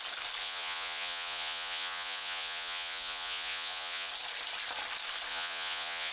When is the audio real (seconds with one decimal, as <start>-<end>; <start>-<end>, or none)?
0.0-0.4; 4.1-5.3